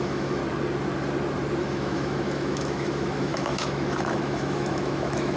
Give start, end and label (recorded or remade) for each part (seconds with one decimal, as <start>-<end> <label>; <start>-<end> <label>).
0.0-0.4 remade; 0.4-1.6 recorded; 1.6-5.4 remade